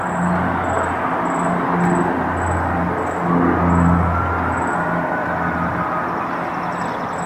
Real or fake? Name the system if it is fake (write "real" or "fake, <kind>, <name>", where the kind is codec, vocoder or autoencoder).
real